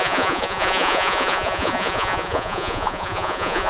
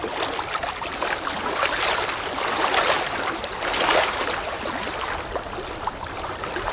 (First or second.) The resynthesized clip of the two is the first